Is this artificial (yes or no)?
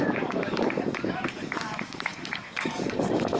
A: yes